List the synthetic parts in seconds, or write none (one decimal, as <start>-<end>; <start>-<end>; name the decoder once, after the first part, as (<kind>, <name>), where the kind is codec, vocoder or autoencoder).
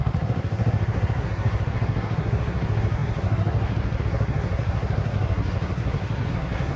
0.0-6.8 (codec, SNAC)